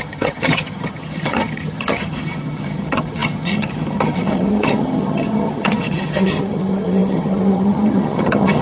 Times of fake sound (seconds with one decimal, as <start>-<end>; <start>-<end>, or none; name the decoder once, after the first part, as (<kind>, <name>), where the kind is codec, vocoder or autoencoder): 0.0-8.6 (vocoder, HiFi-GAN)